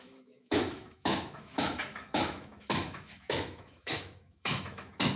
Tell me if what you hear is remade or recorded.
remade